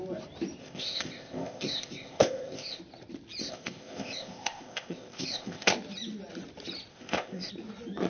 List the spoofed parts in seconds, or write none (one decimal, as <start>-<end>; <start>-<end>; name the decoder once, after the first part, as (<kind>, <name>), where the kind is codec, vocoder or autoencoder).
0.6-2.8 (codec, ZipCodec); 3.4-5.7; 6.9-7.5